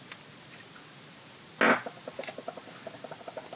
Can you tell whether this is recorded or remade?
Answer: recorded